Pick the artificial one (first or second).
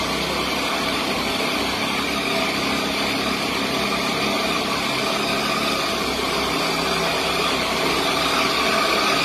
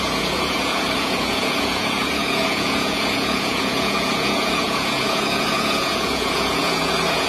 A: second